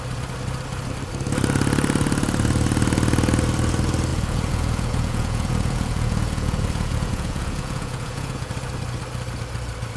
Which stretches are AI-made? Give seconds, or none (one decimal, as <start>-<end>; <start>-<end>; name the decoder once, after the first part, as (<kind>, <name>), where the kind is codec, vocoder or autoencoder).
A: 4.1-8.5 (vocoder, Vocos)